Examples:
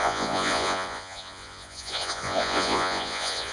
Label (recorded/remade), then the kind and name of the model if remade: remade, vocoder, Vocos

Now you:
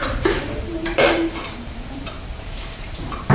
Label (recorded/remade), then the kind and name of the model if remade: remade, vocoder, BigVGAN v2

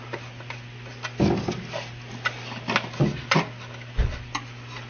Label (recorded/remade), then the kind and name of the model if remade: recorded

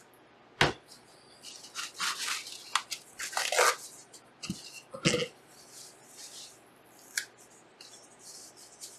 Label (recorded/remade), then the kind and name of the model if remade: recorded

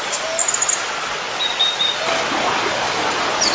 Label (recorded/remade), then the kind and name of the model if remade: recorded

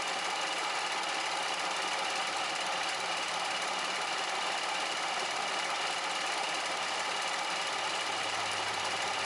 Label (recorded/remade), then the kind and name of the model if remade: recorded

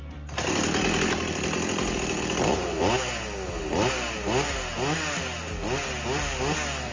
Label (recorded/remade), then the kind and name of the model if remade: recorded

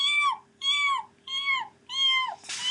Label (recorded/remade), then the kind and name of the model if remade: recorded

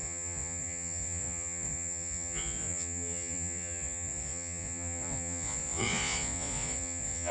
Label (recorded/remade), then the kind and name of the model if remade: remade, vocoder, Vocos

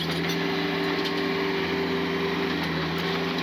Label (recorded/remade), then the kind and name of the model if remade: recorded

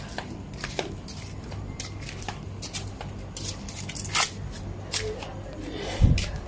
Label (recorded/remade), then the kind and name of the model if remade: recorded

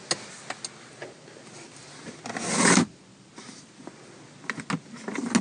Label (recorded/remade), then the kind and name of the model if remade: recorded